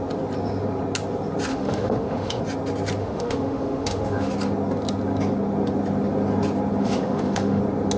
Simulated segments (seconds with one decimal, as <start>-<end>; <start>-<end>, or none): 1.5-2.4; 3.0-4.3; 6.8-7.6